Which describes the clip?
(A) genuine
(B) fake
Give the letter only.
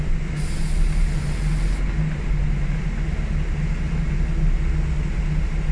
A